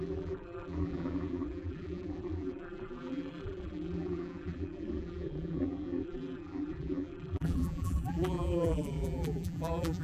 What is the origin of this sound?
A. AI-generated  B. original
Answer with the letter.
A